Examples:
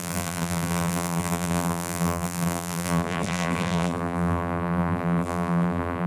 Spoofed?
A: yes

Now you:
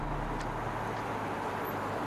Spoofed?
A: no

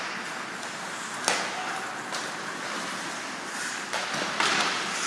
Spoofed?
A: no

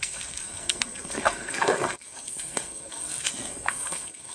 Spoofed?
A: yes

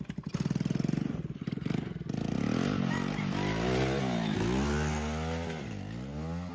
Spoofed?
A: no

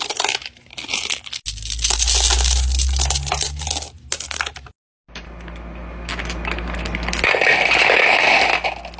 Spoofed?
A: no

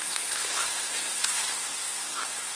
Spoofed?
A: yes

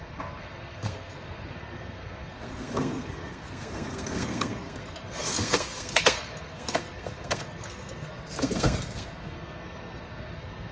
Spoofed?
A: yes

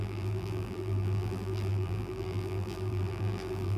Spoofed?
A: yes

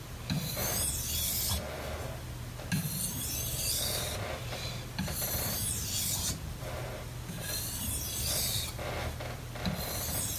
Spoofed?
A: no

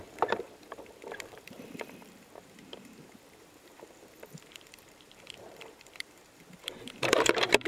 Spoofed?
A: yes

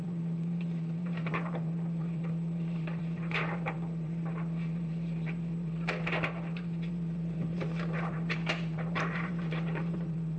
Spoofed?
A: yes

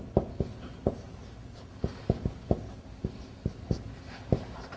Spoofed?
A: no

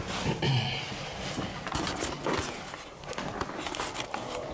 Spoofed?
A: no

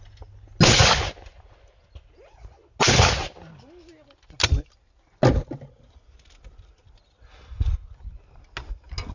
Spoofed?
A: no